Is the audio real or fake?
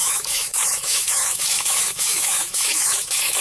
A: fake